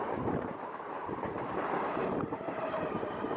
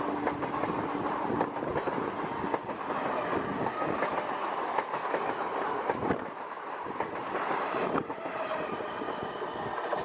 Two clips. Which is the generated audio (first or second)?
first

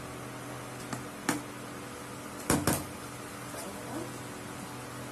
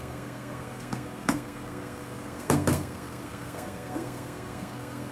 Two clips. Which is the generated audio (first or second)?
second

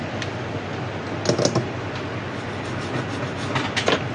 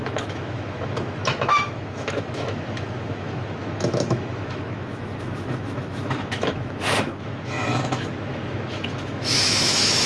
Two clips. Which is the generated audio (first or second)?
second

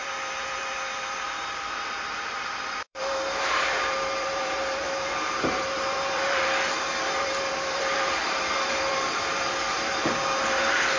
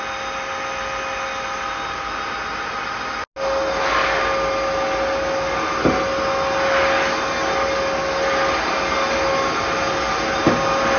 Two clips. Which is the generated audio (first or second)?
first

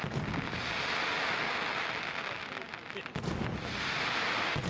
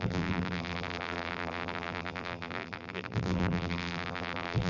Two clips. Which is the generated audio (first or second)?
second